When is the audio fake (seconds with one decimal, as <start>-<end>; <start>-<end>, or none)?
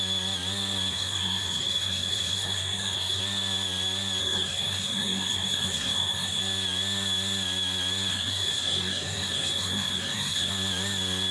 0.9-3.2; 4.2-6.4; 8.1-10.5